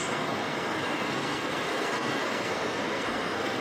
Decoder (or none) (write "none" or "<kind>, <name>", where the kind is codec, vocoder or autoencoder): codec, SNAC